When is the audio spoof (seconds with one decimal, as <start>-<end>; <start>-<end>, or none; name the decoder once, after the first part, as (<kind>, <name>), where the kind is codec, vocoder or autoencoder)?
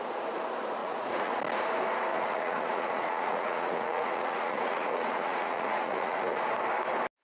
0.8-1.3 (vocoder, Vocos); 2.1-6.4